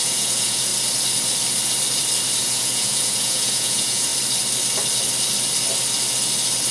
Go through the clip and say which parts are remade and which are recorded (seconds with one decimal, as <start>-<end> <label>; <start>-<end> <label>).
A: 0.0-0.7 remade; 0.7-2.4 recorded; 2.4-4.1 remade; 4.1-6.7 recorded